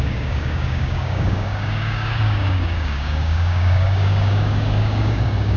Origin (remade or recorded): remade